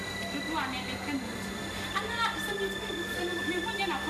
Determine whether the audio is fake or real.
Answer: real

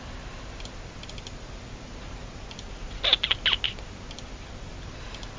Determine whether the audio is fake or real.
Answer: real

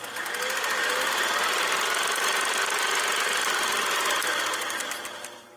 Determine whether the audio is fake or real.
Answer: real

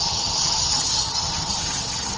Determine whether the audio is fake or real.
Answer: fake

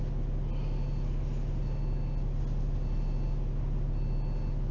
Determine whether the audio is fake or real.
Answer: real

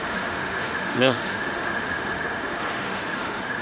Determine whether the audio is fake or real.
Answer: fake